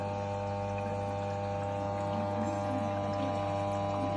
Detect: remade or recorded recorded